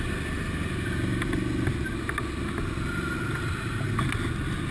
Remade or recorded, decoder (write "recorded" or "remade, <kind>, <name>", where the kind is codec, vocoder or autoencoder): recorded